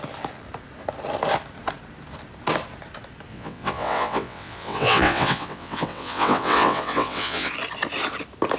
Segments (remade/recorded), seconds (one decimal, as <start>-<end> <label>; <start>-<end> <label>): 0.0-3.3 recorded; 3.3-7.5 remade; 7.5-8.6 recorded